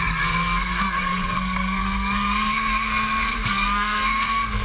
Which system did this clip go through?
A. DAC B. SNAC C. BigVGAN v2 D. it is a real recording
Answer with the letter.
B